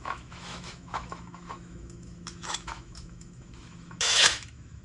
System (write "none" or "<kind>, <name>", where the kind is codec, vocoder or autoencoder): autoencoder, DAC-VAE